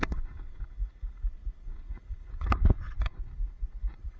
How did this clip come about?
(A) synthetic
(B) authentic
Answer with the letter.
A